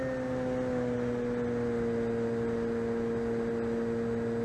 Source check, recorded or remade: recorded